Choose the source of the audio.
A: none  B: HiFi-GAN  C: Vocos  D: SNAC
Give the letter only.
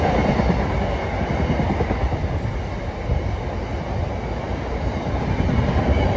A